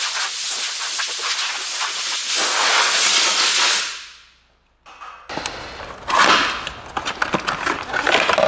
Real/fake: real